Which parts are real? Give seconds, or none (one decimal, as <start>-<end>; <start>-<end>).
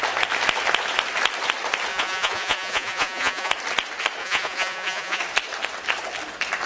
0.0-1.9; 3.5-4.2; 5.2-6.7